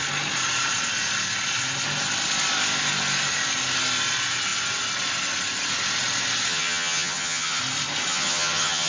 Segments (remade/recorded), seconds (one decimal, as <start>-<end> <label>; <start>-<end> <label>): 0.0-6.5 recorded; 6.5-7.6 remade; 7.6-8.1 recorded; 8.1-8.9 remade

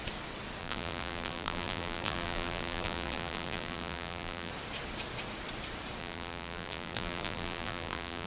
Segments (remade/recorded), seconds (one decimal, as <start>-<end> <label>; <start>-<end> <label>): 0.0-0.6 recorded; 0.6-4.5 remade; 4.5-6.0 recorded; 6.0-8.3 remade

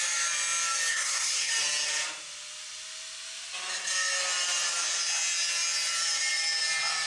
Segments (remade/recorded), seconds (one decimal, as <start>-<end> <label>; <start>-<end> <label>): 0.0-0.9 recorded; 0.9-1.5 remade; 1.5-7.1 recorded

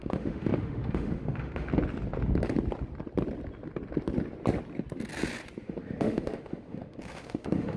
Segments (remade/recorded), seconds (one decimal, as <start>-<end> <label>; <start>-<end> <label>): 0.0-1.7 remade; 1.7-5.6 recorded; 5.6-7.8 remade

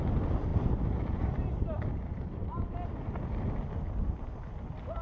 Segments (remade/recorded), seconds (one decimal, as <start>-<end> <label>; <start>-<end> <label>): 0.0-5.0 recorded